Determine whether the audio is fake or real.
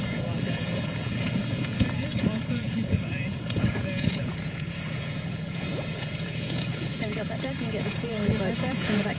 fake